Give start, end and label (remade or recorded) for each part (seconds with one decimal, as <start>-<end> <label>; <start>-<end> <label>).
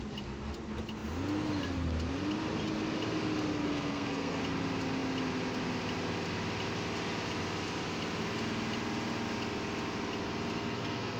0.0-3.6 recorded; 3.6-4.4 remade; 4.4-10.5 recorded; 10.5-11.2 remade